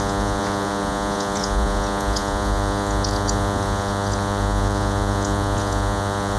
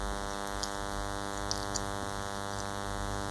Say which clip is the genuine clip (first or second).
second